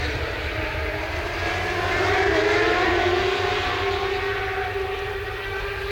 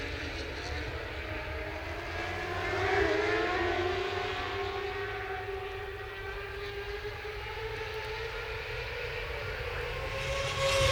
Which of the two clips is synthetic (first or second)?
first